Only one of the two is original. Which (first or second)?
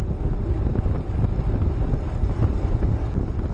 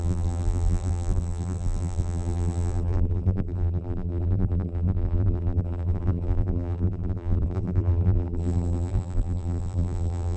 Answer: first